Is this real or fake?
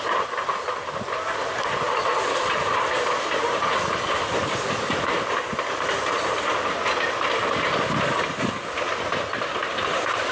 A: real